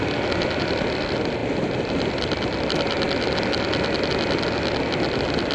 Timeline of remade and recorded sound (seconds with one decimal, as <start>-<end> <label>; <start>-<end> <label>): 0.0-5.5 recorded